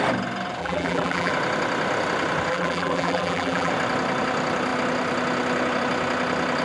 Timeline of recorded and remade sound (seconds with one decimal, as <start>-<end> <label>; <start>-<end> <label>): 0.0-0.6 recorded; 0.6-1.3 remade; 1.3-2.5 recorded; 2.5-3.7 remade; 3.7-6.6 recorded